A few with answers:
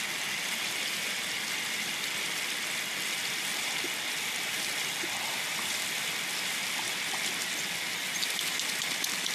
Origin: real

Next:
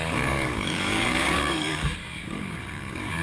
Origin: fake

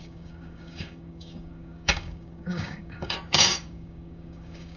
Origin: fake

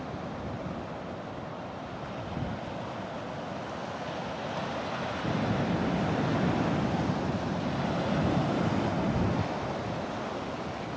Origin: real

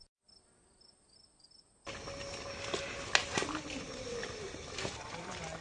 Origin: real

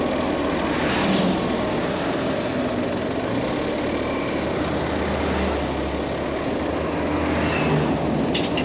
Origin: real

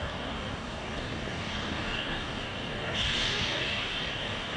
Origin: fake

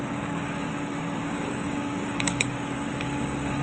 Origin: fake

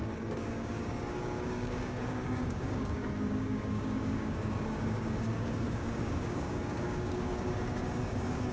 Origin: fake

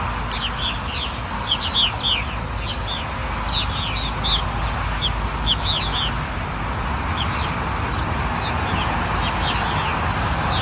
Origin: real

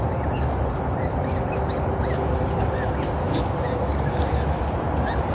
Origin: real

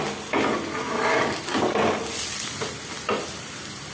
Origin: real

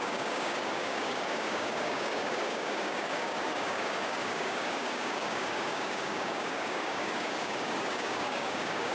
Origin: fake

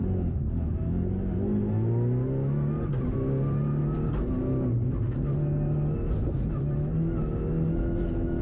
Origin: real